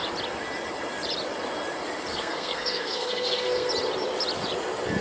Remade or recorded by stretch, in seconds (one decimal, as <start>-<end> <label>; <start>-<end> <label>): 0.0-2.1 recorded; 2.1-3.7 remade; 3.7-5.0 recorded